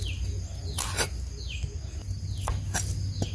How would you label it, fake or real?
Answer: real